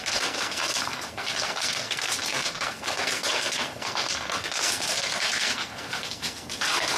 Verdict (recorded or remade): remade